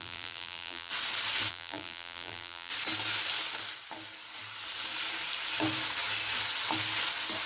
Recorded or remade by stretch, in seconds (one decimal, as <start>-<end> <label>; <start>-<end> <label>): 0.0-0.9 remade; 0.9-1.5 recorded; 1.5-2.7 remade; 2.7-7.5 recorded